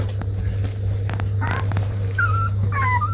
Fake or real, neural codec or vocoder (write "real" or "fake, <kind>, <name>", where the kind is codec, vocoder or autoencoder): real